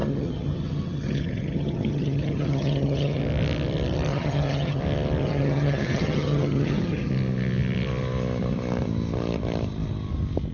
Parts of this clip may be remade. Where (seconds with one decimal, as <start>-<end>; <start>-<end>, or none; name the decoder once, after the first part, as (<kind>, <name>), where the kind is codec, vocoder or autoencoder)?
0.0-3.2 (vocoder, HiFi-GAN); 4.1-4.8; 5.2-7.1